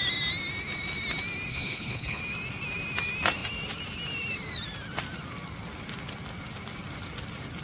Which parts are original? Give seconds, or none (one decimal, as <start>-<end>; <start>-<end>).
0.0-1.5; 2.2-7.6

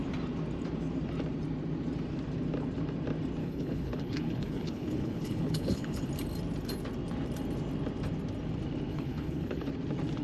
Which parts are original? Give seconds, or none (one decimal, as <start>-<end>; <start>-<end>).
0.0-3.4; 6.1-8.9; 9.7-10.2

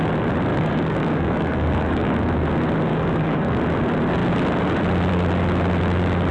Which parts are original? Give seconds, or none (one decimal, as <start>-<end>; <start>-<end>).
0.0-0.5; 2.3-2.9; 3.6-6.3

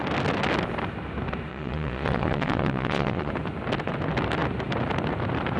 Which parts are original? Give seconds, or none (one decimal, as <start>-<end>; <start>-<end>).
0.0-1.5; 3.3-5.6

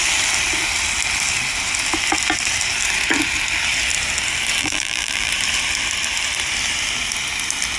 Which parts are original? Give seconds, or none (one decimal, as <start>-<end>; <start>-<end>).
0.0-4.6; 5.3-7.8